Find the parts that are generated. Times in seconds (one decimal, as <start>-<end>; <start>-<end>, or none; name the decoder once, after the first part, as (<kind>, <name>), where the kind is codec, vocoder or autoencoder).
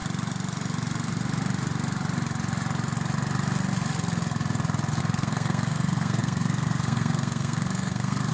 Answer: 5.0-8.3 (codec, SNAC)